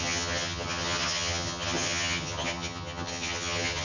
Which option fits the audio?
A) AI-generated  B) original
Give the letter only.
A